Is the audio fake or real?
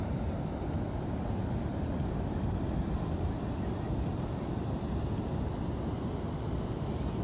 real